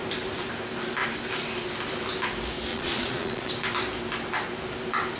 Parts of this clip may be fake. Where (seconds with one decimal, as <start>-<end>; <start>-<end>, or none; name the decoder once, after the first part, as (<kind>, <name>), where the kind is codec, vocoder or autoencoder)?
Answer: 2.7-3.5 (vocoder, Vocos)